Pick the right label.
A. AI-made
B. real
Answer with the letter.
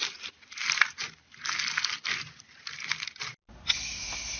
B